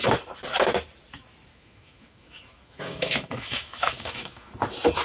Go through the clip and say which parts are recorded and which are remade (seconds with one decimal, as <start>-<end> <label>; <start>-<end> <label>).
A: 0.0-1.5 recorded; 1.5-4.5 remade; 4.5-5.0 recorded